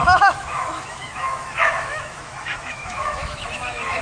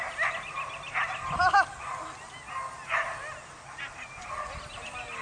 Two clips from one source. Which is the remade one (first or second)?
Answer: first